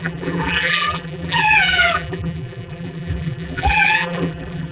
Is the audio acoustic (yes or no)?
no